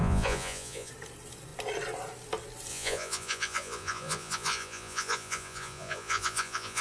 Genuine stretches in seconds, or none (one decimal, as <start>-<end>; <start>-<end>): 0.9-2.7